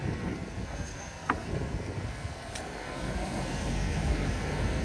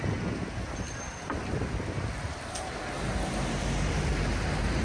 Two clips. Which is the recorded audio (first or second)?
second